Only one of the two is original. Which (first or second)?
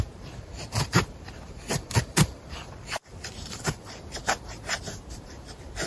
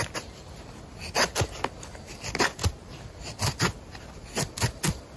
second